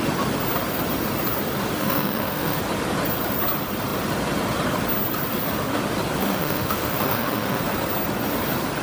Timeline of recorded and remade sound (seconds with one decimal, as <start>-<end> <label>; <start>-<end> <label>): 0.0-1.8 recorded; 1.8-2.6 remade; 2.6-6.2 recorded; 6.2-7.6 remade; 7.6-8.8 recorded